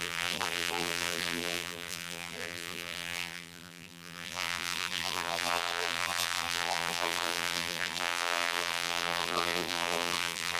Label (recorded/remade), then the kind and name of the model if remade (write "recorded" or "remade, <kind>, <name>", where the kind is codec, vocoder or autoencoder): remade, vocoder, BigVGAN v2